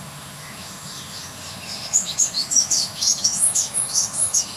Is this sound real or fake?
fake